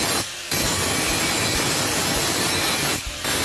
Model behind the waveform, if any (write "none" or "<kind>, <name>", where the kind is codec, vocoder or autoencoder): none